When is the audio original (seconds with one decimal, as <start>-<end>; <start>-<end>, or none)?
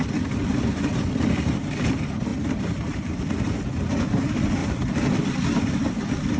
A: 0.0-2.3; 3.1-4.6; 5.4-6.4